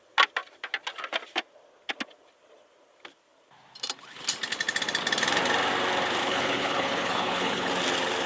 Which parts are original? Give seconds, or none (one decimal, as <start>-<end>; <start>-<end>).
0.0-6.2; 7.7-8.3